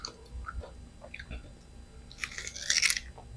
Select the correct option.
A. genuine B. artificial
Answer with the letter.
A